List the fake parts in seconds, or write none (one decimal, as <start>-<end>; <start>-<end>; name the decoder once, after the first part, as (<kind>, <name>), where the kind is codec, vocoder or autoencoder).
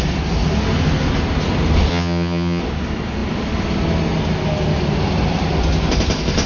1.9-2.6 (vocoder, HiFi-GAN)